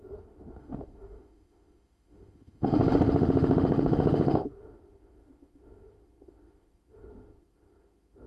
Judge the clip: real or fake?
fake